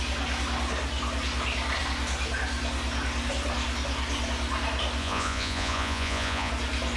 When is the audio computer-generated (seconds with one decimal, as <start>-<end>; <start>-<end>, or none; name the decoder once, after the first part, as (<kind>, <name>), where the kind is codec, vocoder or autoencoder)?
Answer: 5.0-6.5 (vocoder, Vocos)